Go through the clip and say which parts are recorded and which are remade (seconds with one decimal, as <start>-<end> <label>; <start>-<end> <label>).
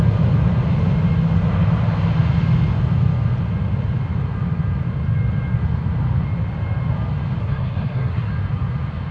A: 0.0-7.4 recorded; 7.4-8.3 remade; 8.3-9.1 recorded